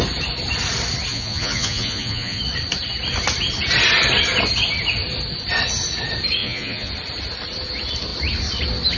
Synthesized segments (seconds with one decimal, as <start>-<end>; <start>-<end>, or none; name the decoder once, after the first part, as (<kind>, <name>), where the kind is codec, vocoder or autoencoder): 1.1-2.4 (vocoder, Vocos); 6.4-6.9